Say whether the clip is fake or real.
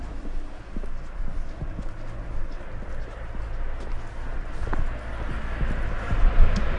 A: real